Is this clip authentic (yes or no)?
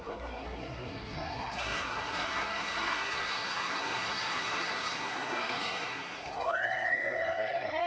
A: no